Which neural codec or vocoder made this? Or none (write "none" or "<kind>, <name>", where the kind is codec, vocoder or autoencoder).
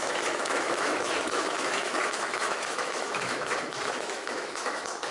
autoencoder, DAC-VAE